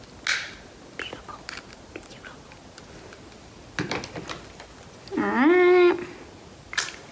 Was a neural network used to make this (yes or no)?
no